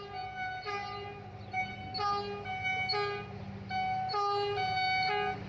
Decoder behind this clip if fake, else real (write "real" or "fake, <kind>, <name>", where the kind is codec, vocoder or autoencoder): real